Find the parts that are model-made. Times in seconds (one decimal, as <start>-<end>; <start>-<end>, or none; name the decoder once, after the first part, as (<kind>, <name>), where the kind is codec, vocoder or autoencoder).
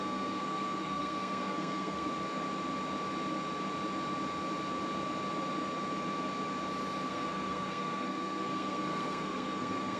0.0-2.1 (codec, SNAC); 7.1-10.0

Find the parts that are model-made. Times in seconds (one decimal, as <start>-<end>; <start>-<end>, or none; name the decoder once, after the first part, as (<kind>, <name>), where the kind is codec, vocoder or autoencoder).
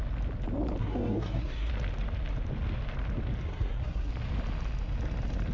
0.8-1.7 (codec, SNAC); 3.4-4.1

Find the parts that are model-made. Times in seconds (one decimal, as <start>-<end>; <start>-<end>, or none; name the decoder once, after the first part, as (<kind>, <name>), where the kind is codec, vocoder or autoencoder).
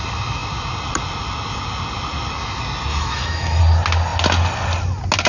2.9-3.6 (autoencoder, DAC-VAE)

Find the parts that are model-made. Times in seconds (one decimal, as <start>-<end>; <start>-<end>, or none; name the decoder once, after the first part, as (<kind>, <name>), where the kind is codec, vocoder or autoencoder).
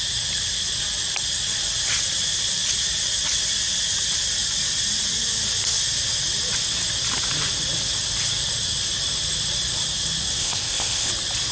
10.4-11.1 (codec, ZipCodec)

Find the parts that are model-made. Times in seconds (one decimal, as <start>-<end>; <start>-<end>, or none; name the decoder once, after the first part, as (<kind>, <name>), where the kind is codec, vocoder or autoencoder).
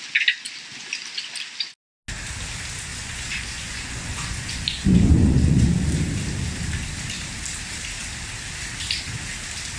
2.9-5.8 (vocoder, Vocos)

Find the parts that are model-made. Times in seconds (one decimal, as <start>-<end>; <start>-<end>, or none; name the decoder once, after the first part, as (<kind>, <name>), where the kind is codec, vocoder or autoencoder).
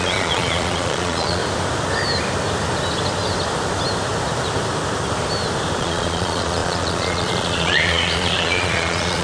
0.0-1.4 (vocoder, Vocos); 5.8-9.2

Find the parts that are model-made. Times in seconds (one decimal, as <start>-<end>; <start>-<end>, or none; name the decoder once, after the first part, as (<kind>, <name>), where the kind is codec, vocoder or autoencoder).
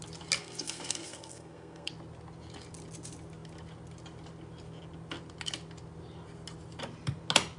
0.4-1.9 (codec, SNAC)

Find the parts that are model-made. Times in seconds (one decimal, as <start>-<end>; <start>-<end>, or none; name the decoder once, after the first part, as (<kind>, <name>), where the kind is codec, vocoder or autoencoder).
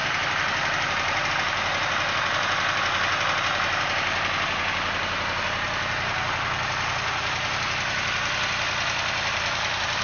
none